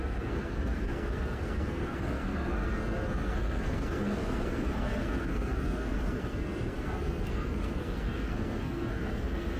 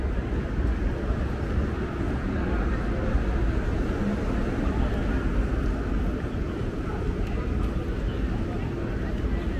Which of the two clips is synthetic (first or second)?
first